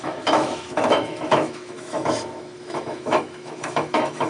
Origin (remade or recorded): remade